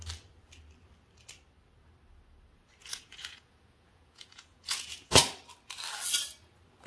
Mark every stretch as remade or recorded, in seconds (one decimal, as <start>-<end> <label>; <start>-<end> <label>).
0.0-2.8 recorded; 2.8-5.3 remade; 5.3-6.9 recorded